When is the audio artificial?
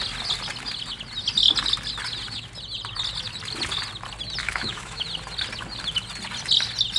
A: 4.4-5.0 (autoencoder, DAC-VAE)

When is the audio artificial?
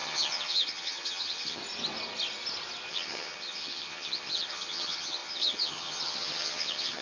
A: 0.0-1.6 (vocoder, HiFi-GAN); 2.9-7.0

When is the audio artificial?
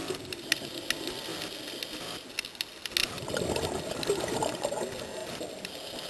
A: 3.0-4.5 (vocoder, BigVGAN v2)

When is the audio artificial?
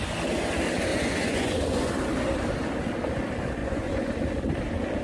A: 0.9-1.9 (vocoder, Vocos); 3.6-4.1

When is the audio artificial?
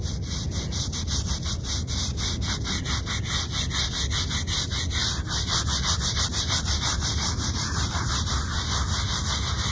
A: 6.3-8.3 (vocoder, BigVGAN v2)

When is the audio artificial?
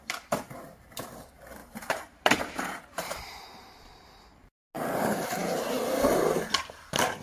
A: 1.6-4.1 (vocoder, BigVGAN v2)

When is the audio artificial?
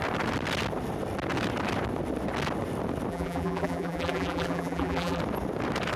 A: 3.1-5.2 (vocoder, BigVGAN v2)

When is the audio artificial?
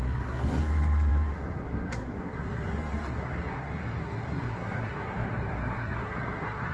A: 0.0-6.7 (codec, SNAC)